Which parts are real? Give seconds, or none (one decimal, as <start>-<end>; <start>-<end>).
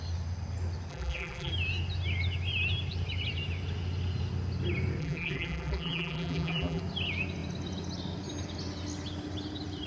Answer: 0.0-0.9; 1.5-5.0; 6.8-9.9